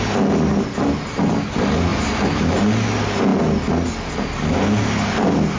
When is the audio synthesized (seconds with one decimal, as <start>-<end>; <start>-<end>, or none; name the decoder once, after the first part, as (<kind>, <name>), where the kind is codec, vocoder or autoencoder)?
1.9-2.6 (vocoder, BigVGAN v2)